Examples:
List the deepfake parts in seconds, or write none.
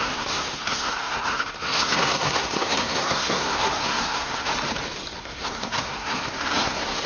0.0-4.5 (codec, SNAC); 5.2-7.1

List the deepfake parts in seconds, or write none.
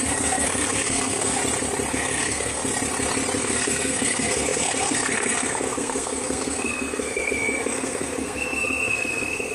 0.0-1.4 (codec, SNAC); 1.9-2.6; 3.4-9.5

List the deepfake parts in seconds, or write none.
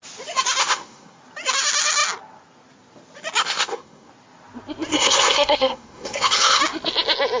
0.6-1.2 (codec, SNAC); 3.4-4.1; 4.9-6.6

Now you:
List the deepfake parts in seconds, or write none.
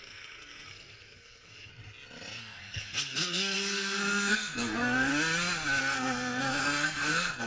0.0-1.7 (codec, SNAC); 2.4-5.1; 5.8-7.5